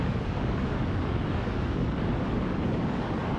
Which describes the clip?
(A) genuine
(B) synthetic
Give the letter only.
B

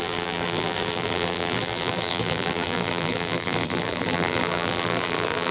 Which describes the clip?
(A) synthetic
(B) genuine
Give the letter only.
A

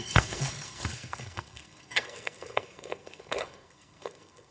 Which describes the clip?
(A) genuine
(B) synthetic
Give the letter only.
B